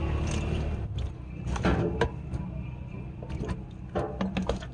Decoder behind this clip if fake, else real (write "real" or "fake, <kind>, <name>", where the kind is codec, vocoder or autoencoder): real